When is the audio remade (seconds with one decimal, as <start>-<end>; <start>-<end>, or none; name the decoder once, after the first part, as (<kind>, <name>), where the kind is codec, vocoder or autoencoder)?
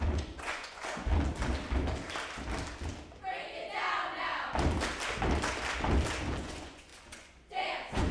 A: 0.0-1.1 (vocoder, Vocos); 3.9-4.3; 6.4-8.1